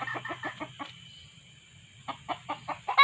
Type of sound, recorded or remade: recorded